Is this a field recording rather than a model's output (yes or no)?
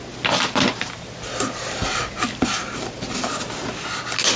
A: yes